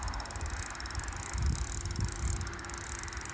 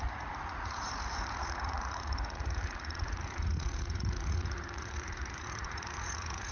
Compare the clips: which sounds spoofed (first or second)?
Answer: second